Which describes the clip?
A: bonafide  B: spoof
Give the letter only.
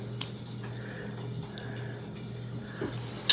A